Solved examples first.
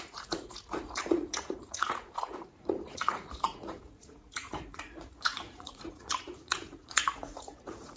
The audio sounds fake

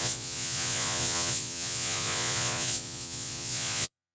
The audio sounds fake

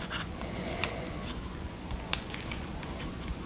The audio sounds fake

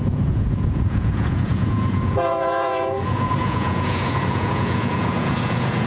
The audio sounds fake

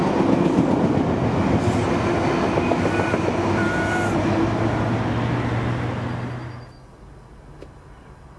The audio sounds real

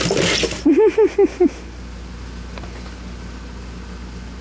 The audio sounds real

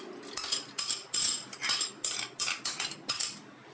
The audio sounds real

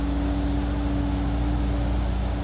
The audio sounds real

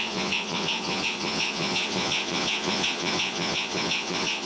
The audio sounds fake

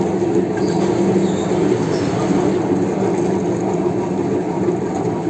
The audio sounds real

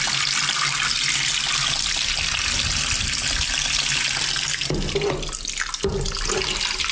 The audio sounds real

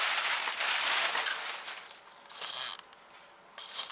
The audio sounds real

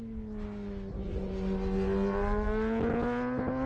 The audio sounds real